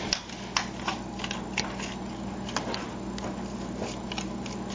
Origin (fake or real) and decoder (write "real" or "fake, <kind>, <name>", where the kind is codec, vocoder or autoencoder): real